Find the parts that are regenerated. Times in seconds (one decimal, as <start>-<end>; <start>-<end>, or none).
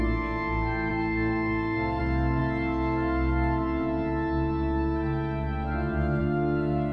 0.9-2.0